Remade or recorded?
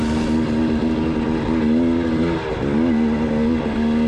recorded